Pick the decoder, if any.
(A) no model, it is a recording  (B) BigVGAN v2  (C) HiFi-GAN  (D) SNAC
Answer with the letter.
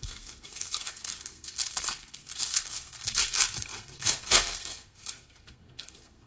D